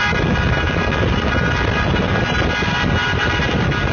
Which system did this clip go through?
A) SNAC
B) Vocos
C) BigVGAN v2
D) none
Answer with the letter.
D